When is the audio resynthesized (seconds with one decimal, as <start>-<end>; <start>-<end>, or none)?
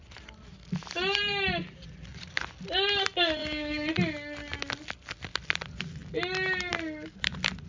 3.4-3.9